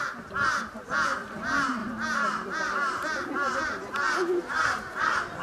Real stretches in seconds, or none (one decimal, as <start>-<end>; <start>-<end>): 0.0-5.4